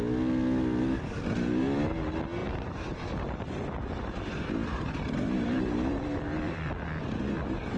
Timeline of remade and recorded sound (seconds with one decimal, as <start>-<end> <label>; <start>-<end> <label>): 0.0-2.4 recorded; 2.4-7.0 remade; 7.0-7.8 recorded